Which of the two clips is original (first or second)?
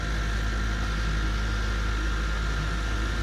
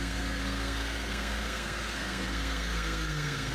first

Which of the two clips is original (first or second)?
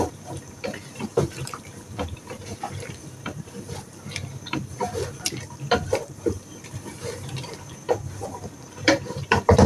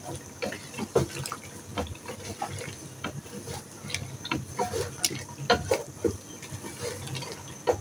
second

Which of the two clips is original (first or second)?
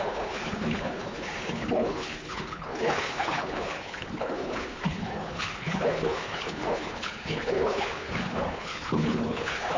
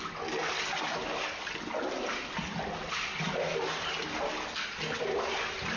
second